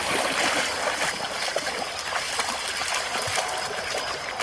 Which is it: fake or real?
real